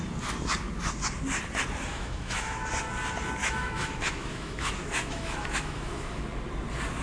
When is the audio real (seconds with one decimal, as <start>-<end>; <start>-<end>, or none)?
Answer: 0.0-1.9; 2.7-3.4; 6.2-7.0